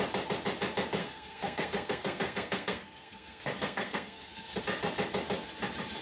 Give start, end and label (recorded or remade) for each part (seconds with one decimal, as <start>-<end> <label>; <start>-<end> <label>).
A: 0.0-1.0 recorded; 1.0-4.6 remade; 4.6-6.0 recorded